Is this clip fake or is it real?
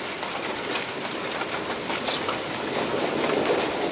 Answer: real